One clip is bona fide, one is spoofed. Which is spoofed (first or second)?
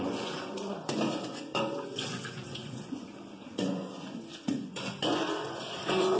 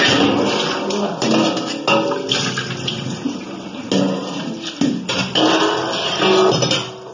first